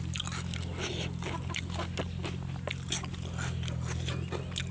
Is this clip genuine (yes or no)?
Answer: yes